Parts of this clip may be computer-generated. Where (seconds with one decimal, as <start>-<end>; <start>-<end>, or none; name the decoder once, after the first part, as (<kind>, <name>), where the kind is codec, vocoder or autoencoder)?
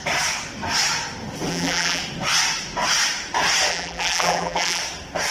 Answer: 1.5-2.0 (vocoder, BigVGAN v2); 3.7-4.8